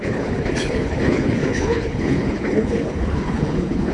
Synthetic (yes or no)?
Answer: yes